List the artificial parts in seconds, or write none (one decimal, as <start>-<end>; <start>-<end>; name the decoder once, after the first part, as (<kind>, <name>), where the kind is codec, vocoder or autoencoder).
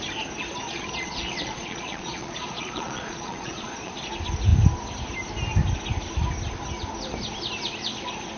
0.7-3.9 (vocoder, Vocos)